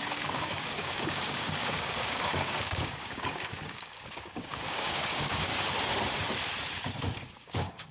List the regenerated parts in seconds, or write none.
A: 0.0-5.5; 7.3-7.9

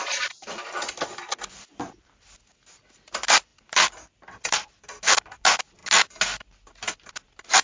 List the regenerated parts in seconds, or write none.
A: none

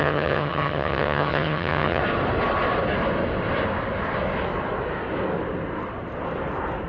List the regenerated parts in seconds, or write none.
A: 0.0-2.0

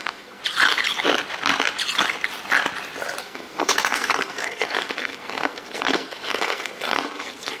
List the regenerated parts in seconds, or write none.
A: 0.0-0.4; 3.2-7.6

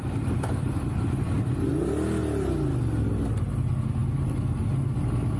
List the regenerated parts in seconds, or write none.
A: none

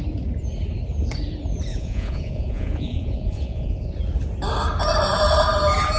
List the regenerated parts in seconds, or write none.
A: 1.7-3.9

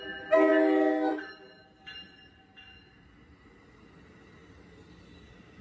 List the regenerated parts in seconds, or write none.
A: none